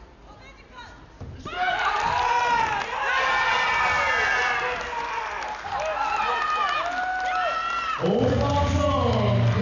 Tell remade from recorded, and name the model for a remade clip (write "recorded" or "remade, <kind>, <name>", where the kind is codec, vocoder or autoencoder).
recorded